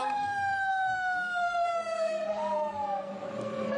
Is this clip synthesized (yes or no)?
yes